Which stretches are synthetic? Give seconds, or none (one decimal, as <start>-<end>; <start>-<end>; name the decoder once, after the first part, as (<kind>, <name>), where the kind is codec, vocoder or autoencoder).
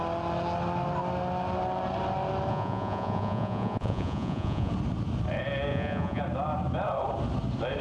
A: 2.5-4.7 (vocoder, Vocos); 5.7-6.2